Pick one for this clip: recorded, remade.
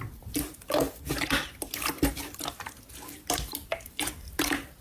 recorded